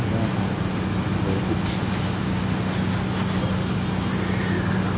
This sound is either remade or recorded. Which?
recorded